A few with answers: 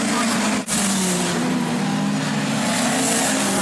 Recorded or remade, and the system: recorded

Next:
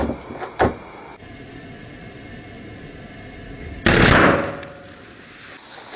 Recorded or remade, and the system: recorded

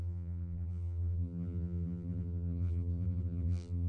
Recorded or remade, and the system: remade, vocoder, BigVGAN v2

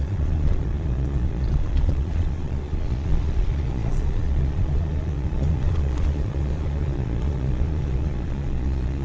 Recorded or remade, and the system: remade, vocoder, Vocos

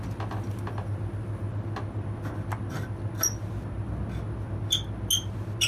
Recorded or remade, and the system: recorded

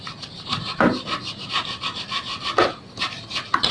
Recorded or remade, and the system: remade, vocoder, BigVGAN v2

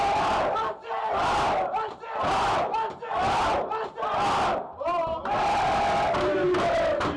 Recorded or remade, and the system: recorded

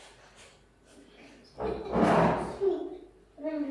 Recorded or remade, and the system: recorded